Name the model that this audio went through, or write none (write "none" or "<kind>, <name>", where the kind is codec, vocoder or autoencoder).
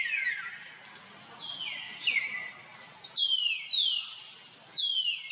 none